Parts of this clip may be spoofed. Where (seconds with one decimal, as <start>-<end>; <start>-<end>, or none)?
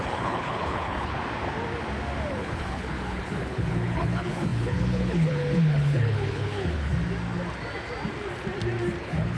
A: 0.0-1.2; 2.3-6.9; 9.0-9.4